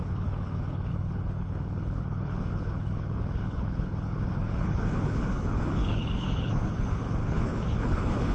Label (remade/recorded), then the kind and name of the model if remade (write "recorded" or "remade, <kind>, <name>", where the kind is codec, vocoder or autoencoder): remade, codec, HILCodec